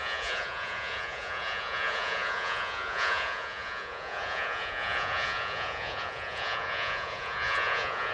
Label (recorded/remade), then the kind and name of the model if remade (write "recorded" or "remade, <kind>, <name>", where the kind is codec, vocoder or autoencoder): remade, vocoder, Vocos